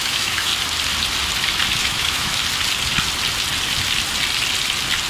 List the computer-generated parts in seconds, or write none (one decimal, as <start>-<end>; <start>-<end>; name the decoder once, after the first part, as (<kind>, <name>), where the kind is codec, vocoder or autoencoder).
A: 0.0-0.5 (autoencoder, DAC-VAE); 1.8-2.4